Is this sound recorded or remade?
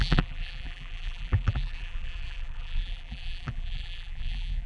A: remade